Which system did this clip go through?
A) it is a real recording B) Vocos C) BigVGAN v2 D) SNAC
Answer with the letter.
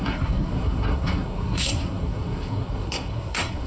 D